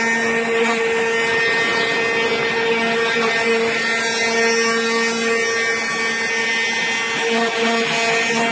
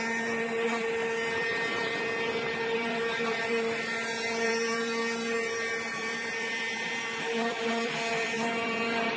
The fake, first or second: second